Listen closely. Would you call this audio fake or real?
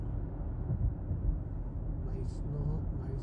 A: real